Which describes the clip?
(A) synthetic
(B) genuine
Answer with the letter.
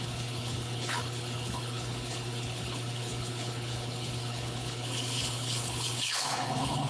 A